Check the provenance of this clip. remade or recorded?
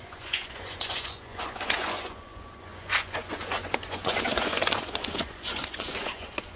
remade